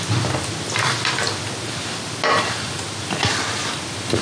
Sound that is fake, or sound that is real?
real